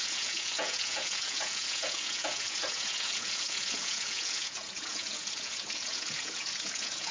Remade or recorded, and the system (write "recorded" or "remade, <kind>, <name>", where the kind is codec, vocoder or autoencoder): remade, vocoder, Vocos